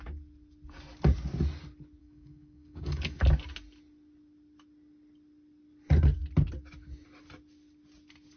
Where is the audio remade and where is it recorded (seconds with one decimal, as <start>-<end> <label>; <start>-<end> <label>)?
0.0-2.0 recorded; 2.0-3.2 remade; 3.2-8.4 recorded